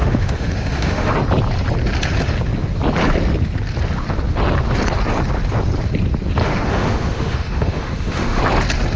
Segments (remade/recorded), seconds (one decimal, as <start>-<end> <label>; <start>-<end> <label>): 0.0-1.1 remade; 1.1-6.4 recorded; 6.4-8.4 remade; 8.4-9.0 recorded